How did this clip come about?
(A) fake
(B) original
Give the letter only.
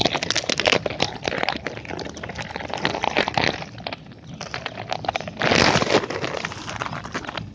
B